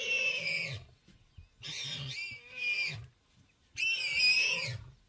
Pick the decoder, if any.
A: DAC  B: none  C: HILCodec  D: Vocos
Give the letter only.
B